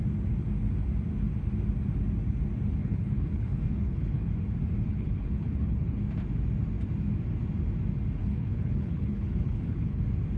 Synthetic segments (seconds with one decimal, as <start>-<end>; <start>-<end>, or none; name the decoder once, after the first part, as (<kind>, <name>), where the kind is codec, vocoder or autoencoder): 2.8-4.3 (codec, HILCodec); 4.9-6.0; 8.2-10.0